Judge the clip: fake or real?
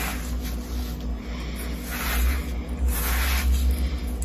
real